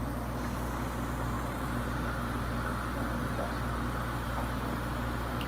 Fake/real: real